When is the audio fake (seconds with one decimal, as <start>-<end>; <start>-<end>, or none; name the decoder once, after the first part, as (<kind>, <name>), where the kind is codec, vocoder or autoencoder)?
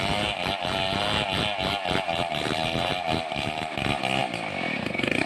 0.0-0.8 (vocoder, BigVGAN v2); 1.4-5.3